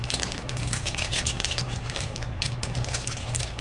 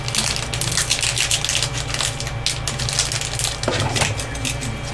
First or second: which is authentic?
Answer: second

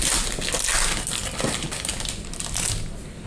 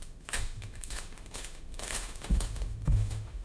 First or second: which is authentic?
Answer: first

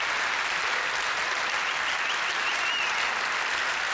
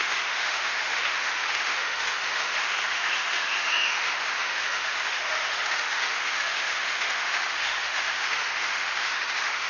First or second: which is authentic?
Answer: first